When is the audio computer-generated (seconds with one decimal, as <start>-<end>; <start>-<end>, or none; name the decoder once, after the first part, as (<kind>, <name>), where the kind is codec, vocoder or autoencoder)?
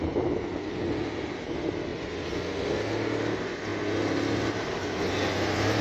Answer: none